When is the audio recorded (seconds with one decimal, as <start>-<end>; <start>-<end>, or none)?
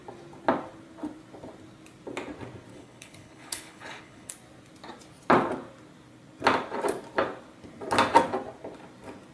0.0-2.7; 4.3-9.3